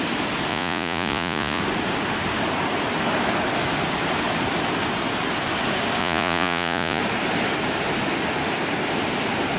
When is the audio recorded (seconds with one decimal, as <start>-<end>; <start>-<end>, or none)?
0.0-0.5; 1.6-6.0; 7.0-9.6